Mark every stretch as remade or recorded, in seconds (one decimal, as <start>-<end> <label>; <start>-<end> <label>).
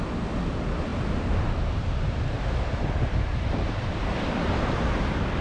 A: 0.0-0.9 recorded; 0.9-4.1 remade; 4.1-5.4 recorded